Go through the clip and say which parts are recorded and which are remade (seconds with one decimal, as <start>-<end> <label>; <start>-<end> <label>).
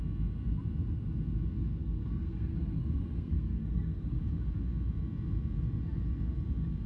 0.0-1.8 recorded; 1.8-4.2 remade; 4.2-6.9 recorded